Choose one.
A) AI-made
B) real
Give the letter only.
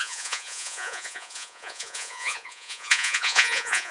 A